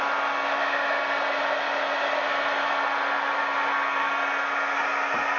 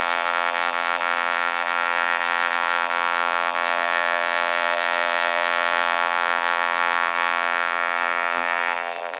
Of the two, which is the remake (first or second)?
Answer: second